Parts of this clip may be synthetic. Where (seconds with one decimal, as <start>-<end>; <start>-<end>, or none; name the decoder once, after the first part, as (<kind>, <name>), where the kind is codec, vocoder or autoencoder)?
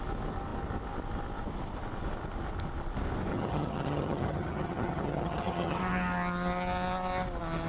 3.3-5.8 (vocoder, HiFi-GAN)